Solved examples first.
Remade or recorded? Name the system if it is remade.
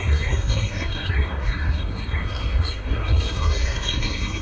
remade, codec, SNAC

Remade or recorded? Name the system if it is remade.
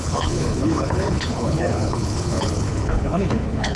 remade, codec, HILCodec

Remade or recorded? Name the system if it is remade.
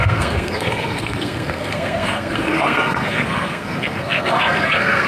remade, codec, SNAC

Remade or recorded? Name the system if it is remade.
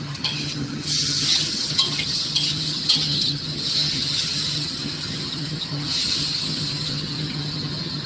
remade, vocoder, HiFi-GAN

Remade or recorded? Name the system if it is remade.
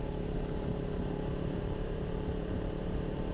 remade, vocoder, BigVGAN v2